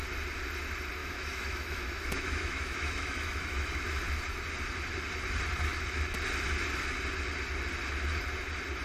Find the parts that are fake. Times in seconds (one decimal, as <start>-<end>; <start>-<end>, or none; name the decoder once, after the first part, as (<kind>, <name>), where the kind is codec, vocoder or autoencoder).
1.0-3.8 (autoencoder, DAC-VAE)